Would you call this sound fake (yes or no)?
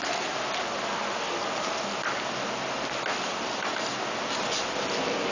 no